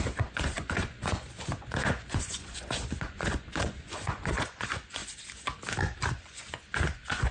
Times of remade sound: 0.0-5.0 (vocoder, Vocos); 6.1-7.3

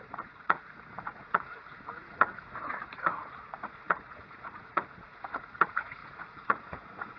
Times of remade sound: 0.0-7.2 (vocoder, Vocos)

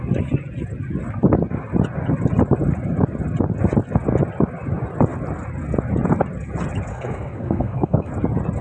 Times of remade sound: 6.9-8.1 (codec, SNAC)

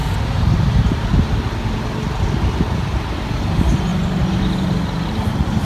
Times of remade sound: none